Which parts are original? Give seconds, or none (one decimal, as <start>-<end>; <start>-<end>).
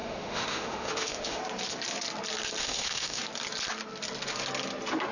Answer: 1.4-2.6; 3.2-5.1